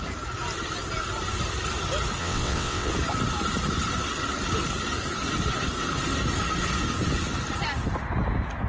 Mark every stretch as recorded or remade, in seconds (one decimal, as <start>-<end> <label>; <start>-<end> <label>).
0.0-2.2 recorded; 2.2-2.9 remade; 2.9-8.7 recorded